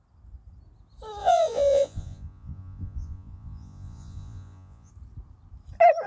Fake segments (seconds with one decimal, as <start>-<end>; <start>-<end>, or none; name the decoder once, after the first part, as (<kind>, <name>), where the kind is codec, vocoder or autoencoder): 1.2-4.9 (vocoder, Vocos)